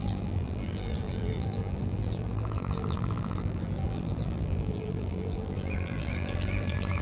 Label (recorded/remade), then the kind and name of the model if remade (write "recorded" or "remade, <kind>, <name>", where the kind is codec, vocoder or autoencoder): remade, vocoder, BigVGAN v2